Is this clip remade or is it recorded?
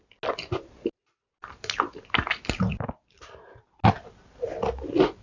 recorded